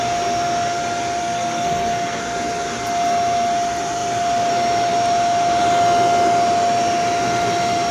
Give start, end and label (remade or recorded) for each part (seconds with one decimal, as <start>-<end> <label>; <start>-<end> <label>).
0.0-1.2 recorded; 1.2-2.2 remade; 2.2-7.9 recorded